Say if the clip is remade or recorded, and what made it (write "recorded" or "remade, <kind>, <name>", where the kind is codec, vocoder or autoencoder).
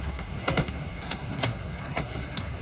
remade, codec, SNAC